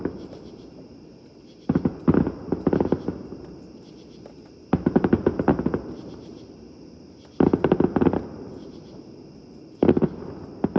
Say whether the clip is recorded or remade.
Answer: recorded